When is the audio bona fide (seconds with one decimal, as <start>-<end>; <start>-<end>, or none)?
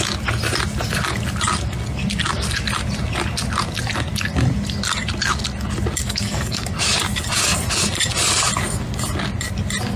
0.0-6.0; 6.9-10.0